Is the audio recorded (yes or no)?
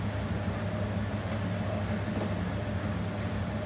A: yes